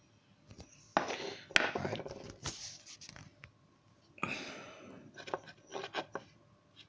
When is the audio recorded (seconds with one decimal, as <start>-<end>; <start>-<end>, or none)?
0.0-6.9